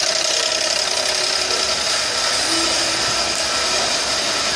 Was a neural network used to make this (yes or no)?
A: no